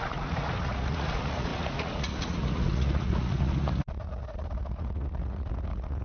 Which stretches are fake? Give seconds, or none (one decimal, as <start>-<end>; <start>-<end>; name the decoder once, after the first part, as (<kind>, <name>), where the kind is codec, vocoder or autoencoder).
0.0-6.0 (vocoder, Vocos)